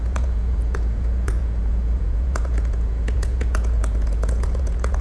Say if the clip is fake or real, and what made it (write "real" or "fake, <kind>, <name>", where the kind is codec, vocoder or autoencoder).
fake, vocoder, Vocos